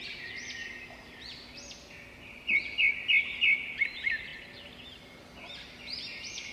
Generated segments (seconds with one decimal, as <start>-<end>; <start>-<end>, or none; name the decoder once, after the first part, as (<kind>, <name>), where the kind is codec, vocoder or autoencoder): none